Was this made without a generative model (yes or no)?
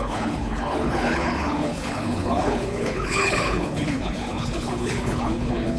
no